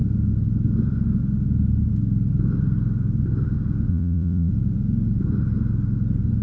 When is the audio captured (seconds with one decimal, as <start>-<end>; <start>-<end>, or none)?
0.0-3.9; 4.5-6.4